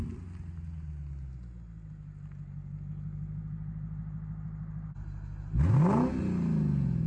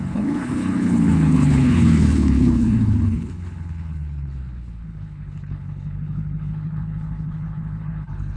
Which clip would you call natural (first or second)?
first